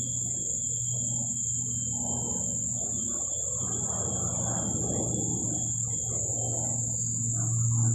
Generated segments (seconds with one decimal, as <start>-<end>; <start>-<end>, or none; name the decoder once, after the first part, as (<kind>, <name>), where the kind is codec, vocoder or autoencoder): none